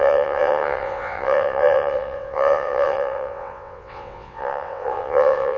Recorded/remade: remade